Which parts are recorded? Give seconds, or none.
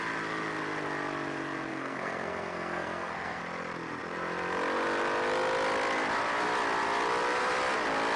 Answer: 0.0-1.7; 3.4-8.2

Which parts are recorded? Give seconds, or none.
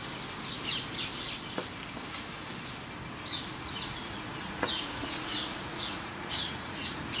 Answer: 0.0-3.3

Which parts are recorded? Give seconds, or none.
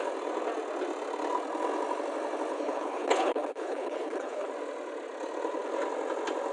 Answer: 0.0-2.5; 4.5-6.5